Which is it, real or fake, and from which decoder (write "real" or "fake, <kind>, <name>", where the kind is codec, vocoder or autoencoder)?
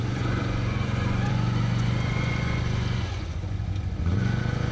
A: fake, vocoder, Vocos